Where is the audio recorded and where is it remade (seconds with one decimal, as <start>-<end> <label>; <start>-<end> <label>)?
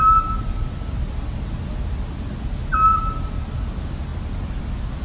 0.0-5.0 recorded